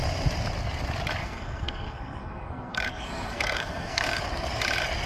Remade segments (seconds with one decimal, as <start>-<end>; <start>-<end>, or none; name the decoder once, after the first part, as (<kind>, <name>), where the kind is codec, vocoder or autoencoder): 1.2-4.2 (codec, SNAC)